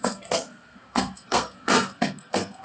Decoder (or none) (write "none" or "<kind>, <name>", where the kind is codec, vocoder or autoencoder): codec, SNAC